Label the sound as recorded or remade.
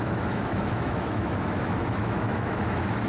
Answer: remade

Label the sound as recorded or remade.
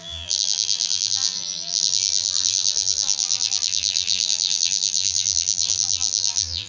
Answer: remade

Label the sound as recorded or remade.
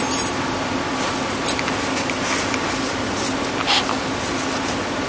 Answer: recorded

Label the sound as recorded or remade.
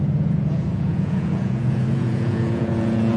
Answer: remade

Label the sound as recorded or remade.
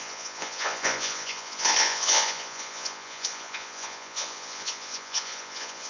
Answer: remade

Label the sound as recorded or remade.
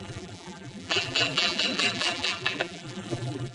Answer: remade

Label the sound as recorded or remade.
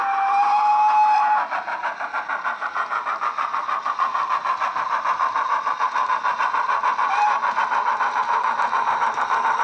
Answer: recorded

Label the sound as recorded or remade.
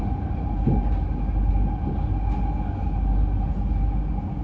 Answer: recorded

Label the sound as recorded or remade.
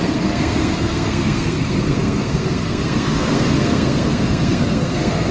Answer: remade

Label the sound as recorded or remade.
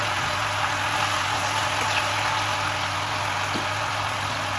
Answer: recorded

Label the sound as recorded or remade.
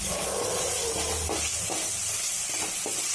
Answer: recorded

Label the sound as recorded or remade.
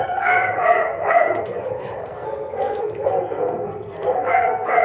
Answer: remade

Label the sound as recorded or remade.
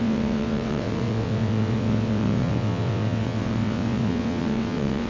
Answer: remade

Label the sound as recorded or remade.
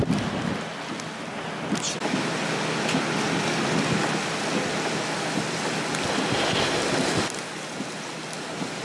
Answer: recorded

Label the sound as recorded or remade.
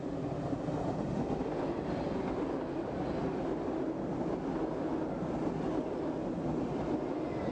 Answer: recorded